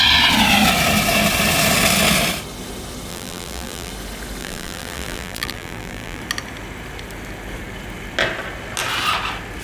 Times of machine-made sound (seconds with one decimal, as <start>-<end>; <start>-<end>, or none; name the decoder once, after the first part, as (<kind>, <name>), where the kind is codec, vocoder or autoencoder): 3.1-3.9 (vocoder, BigVGAN v2); 4.4-6.2